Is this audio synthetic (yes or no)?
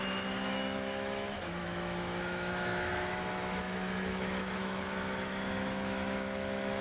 yes